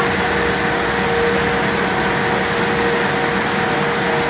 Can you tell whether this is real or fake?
real